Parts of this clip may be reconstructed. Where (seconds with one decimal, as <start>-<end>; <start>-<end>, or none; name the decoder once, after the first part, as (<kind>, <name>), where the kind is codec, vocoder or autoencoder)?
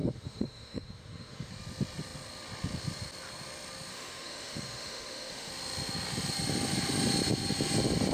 0.0-1.5 (autoencoder, DAC-VAE); 3.9-5.5